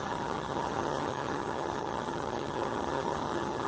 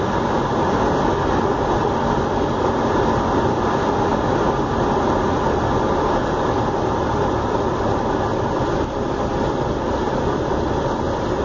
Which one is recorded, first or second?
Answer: second